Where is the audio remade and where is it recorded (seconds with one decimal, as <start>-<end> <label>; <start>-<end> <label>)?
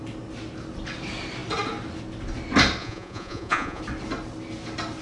0.0-2.8 recorded; 2.8-3.8 remade; 3.8-5.0 recorded